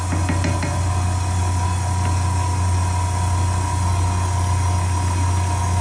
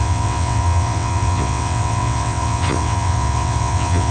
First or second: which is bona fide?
first